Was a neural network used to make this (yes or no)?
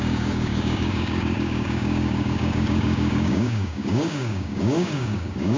yes